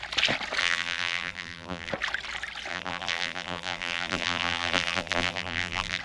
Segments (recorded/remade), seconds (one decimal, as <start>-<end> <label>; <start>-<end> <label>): 0.0-0.6 recorded; 0.6-1.9 remade; 1.9-2.7 recorded; 2.7-6.0 remade